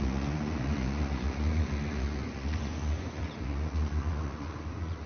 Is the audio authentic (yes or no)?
no